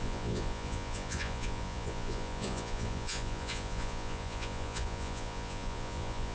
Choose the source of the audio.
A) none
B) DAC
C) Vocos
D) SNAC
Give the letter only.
C